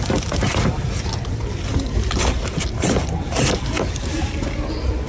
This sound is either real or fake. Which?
fake